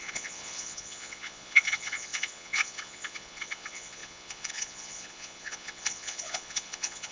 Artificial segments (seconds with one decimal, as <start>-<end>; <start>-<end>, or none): 0.0-7.1